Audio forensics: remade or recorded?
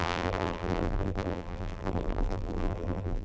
remade